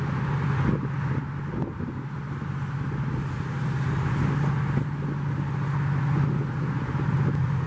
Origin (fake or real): real